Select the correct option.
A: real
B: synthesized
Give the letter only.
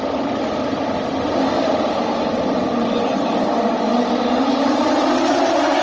A